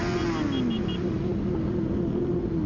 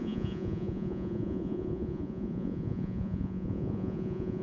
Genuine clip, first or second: first